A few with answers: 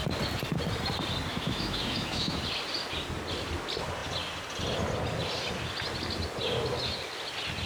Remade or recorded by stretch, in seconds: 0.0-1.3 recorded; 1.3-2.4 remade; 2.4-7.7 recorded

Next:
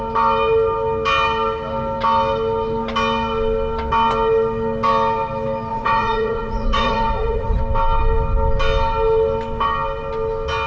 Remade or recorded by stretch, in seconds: 0.0-5.7 recorded; 5.7-7.6 remade; 7.6-10.7 recorded

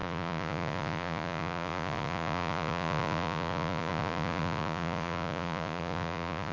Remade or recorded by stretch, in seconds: 0.0-6.5 remade

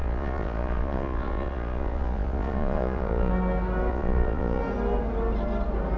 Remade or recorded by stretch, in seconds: 0.0-3.3 remade; 3.3-3.9 recorded; 3.9-4.6 remade; 4.6-6.0 recorded

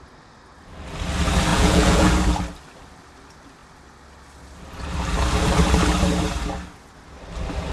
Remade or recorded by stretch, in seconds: 0.0-1.5 recorded; 1.5-2.1 remade; 2.1-7.7 recorded